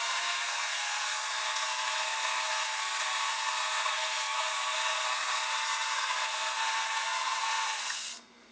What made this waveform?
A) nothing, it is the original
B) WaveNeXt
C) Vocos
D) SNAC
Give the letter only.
D